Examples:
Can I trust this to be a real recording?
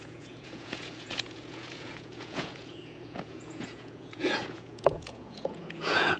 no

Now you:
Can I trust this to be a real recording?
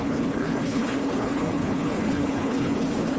no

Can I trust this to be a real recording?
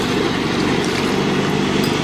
yes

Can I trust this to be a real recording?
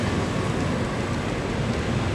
yes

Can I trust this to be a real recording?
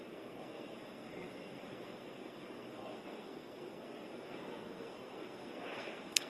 no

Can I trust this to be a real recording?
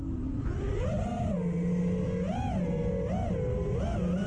yes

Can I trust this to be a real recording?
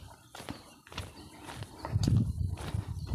no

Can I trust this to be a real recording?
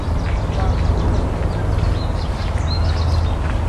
yes